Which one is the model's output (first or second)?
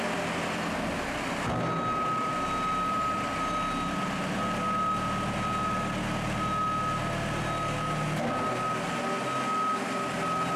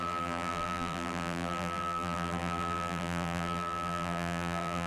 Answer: second